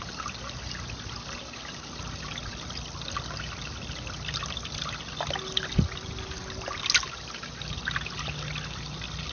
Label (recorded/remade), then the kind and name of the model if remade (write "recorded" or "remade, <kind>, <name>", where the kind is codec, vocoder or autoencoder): recorded